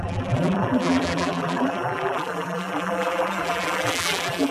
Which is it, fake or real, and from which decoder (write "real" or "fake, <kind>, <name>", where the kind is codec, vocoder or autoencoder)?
fake, vocoder, BigVGAN v2